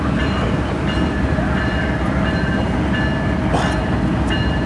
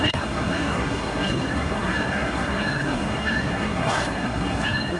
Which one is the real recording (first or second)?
first